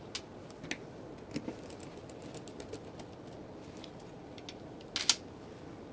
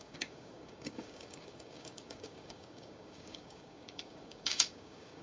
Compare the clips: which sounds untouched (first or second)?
first